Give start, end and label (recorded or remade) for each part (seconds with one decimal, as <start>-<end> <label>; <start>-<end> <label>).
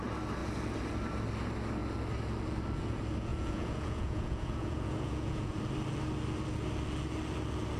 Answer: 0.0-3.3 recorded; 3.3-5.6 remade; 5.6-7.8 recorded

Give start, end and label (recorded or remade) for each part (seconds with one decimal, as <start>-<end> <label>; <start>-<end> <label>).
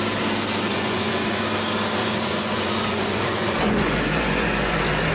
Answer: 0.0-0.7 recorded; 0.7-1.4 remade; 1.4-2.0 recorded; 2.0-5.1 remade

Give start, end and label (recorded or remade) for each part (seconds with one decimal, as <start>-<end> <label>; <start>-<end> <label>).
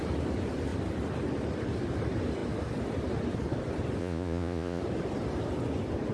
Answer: 0.0-4.0 recorded; 4.0-4.8 remade; 4.8-6.1 recorded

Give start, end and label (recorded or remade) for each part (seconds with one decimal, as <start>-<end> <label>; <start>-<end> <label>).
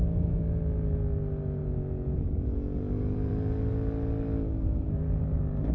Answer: 0.0-1.6 recorded; 1.6-3.3 remade; 3.3-5.7 recorded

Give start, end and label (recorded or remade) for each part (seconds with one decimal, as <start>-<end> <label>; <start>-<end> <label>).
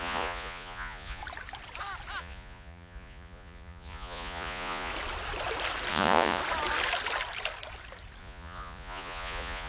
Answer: 0.0-1.2 remade; 1.2-2.2 recorded; 2.2-4.9 remade; 4.9-5.9 recorded; 5.9-6.4 remade; 6.4-8.2 recorded; 8.2-9.7 remade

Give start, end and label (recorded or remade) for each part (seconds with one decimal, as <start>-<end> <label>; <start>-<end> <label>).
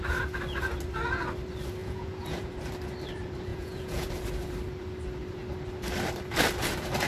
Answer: 0.0-1.8 recorded; 1.8-2.5 remade; 2.5-3.5 recorded; 3.5-4.1 remade; 4.1-7.1 recorded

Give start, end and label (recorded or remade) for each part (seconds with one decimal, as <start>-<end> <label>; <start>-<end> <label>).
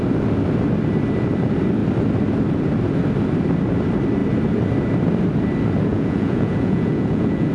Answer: 0.0-5.9 recorded; 5.9-7.5 remade